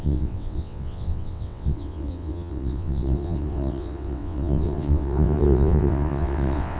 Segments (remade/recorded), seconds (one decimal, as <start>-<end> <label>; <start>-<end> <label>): 0.0-6.8 remade